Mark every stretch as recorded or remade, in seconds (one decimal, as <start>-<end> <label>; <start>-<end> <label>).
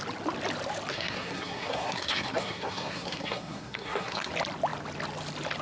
0.0-0.9 recorded; 0.9-4.3 remade; 4.3-5.6 recorded